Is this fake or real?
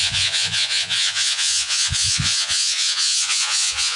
fake